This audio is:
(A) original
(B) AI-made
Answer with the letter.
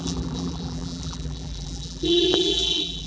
B